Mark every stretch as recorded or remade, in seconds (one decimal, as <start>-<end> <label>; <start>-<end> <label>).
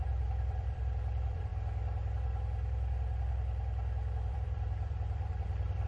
0.0-1.5 remade; 1.5-4.3 recorded; 4.3-5.9 remade